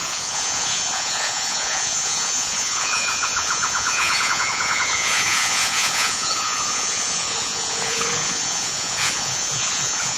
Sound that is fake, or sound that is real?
fake